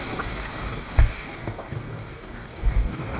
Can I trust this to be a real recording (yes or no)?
no